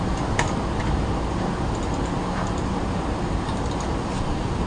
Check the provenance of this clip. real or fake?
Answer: fake